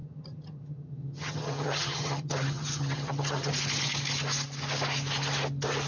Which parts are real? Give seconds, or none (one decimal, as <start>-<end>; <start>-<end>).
3.5-5.9

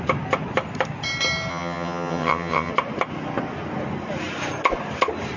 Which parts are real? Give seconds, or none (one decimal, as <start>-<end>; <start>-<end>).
0.0-1.5; 2.7-5.4

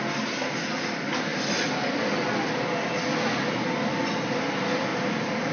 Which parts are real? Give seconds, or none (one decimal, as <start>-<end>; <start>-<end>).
0.0-5.5

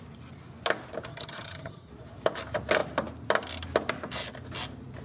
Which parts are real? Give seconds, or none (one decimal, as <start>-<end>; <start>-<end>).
0.0-1.1; 1.9-5.0

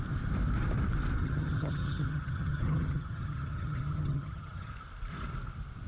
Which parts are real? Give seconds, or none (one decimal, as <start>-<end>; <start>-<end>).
0.0-1.2; 4.7-5.9

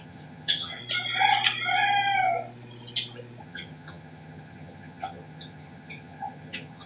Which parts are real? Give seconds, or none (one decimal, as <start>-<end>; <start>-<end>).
0.8-3.4

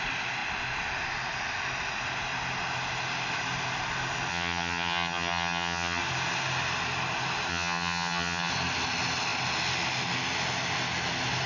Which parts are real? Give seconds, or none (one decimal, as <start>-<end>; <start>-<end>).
0.0-4.3; 6.0-7.5; 8.5-11.5

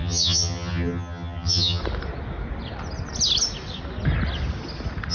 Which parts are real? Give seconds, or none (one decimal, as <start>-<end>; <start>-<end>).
1.8-5.1